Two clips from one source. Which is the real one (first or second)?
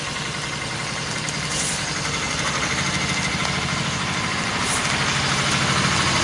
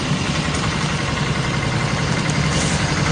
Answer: first